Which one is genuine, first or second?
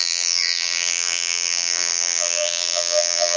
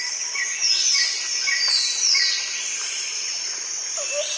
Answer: second